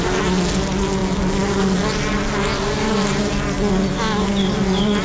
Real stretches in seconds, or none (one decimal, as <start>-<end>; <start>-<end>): 0.0-5.0